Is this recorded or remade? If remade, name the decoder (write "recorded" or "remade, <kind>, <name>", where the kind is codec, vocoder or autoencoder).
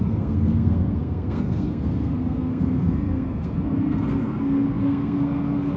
remade, codec, SNAC